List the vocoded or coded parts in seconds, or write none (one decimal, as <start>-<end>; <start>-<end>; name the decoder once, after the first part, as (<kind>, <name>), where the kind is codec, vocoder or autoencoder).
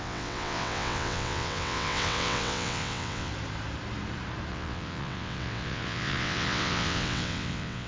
0.0-3.3 (vocoder, WaveNeXt); 4.5-7.9